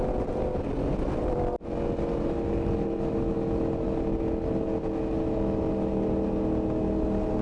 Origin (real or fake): real